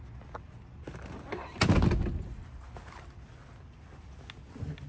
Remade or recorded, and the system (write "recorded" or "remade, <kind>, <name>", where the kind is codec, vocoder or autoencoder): recorded